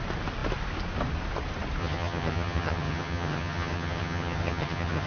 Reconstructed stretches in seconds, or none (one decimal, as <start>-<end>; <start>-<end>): 1.8-5.1